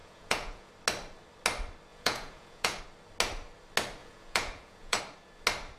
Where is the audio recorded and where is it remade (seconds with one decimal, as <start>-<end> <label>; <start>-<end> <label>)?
0.0-0.7 remade; 0.7-1.9 recorded; 1.9-2.8 remade; 2.8-4.0 recorded; 4.0-5.0 remade; 5.0-5.8 recorded